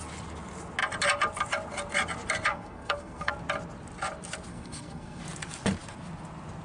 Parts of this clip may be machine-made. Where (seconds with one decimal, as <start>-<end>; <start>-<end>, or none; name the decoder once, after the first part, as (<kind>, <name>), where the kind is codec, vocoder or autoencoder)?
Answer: 2.5-3.3 (codec, SNAC); 4.5-5.2